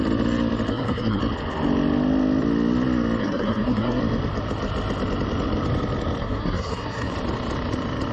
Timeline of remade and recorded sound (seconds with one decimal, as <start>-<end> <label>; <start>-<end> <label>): 0.0-0.7 recorded; 0.7-1.2 remade; 1.2-3.2 recorded; 3.2-4.0 remade; 4.0-6.2 recorded; 6.2-7.1 remade; 7.1-8.1 recorded